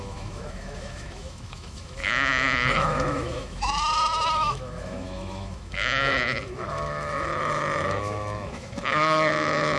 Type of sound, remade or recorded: remade